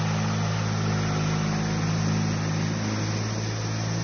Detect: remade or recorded recorded